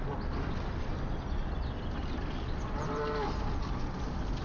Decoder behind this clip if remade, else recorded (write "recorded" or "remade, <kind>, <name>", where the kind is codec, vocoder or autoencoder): recorded